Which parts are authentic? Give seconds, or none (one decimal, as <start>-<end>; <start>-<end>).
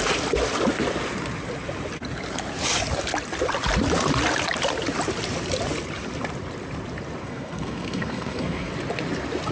0.0-7.2; 8.7-9.5